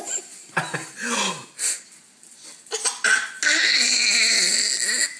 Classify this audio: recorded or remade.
recorded